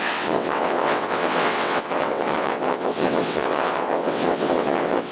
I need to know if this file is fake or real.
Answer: fake